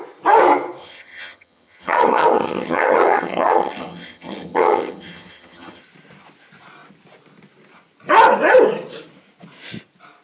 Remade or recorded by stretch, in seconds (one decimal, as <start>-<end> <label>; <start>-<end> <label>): 0.0-0.8 recorded; 0.8-5.8 remade; 5.8-10.2 recorded